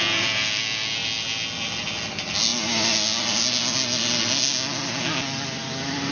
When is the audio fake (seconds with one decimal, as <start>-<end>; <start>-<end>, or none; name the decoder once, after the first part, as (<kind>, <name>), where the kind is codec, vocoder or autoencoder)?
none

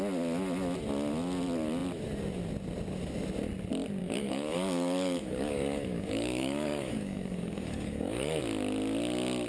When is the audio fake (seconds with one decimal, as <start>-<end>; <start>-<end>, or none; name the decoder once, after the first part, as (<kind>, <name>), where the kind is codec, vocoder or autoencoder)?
4.0-8.4 (codec, DAC)

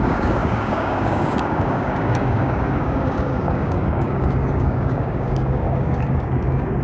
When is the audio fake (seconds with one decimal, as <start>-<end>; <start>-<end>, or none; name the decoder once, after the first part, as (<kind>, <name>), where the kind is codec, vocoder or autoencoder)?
0.0-6.8 (codec, DAC)